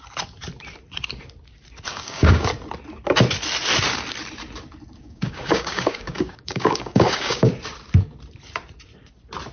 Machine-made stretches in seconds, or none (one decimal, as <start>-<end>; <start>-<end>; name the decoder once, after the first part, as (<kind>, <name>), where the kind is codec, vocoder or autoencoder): 1.9-2.5 (codec, DAC); 5.0-7.5

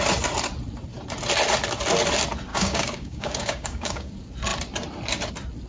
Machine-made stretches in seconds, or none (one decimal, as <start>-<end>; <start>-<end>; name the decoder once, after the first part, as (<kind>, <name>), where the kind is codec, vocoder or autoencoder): 2.5-4.1 (codec, DAC)

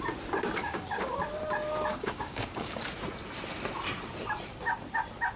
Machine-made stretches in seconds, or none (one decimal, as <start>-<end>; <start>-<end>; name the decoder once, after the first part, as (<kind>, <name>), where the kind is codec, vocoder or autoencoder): 0.6-1.2 (codec, DAC); 1.9-2.8